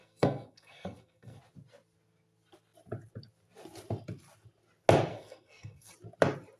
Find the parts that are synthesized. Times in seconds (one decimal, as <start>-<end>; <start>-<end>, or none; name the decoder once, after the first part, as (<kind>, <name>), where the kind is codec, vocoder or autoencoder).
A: 0.0-1.4 (codec, SNAC); 5.1-5.9